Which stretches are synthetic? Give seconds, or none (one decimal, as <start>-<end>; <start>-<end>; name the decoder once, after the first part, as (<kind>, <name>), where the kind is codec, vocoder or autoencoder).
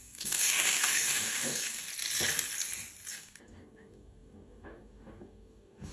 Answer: 0.0-1.9 (codec, DAC); 3.1-5.9